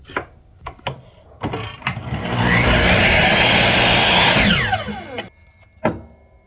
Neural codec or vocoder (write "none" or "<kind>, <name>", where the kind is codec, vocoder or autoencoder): none